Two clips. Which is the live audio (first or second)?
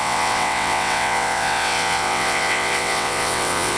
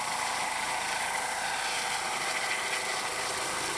second